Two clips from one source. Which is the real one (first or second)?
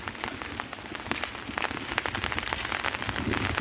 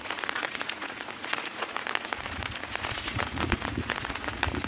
first